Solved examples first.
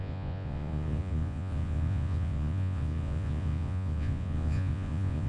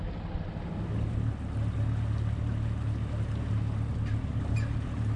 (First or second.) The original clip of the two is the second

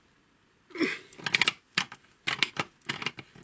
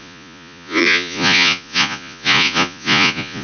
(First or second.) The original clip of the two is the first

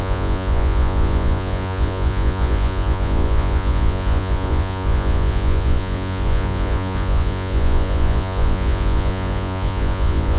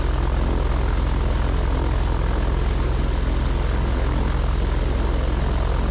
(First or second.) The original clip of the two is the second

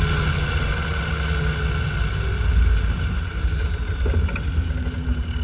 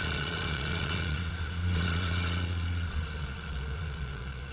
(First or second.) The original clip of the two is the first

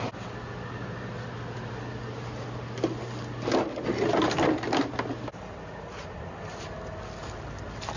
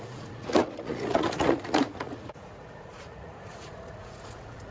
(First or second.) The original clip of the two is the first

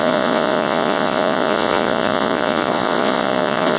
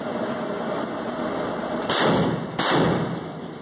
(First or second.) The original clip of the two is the second